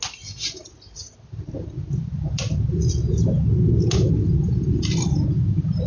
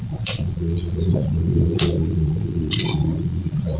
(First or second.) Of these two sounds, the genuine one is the first